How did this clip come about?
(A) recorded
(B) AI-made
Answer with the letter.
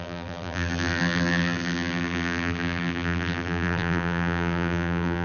B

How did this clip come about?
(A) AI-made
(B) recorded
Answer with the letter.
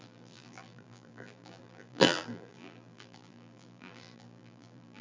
A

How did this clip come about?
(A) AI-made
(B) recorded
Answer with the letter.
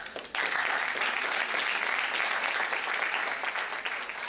B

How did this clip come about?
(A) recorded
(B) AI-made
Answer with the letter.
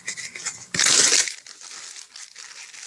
A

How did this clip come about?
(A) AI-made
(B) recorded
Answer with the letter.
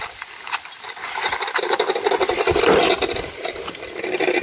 B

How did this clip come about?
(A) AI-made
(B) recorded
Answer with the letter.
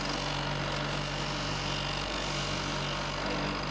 B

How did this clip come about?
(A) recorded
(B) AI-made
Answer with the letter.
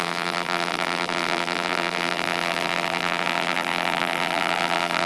B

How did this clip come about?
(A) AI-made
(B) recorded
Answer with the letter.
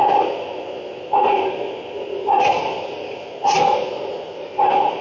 B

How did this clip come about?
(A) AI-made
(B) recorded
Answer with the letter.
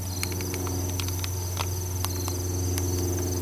B